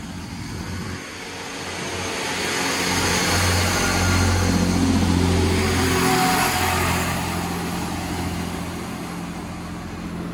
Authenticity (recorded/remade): recorded